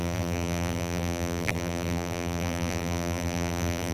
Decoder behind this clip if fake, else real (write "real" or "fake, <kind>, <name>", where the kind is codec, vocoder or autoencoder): fake, vocoder, BigVGAN v2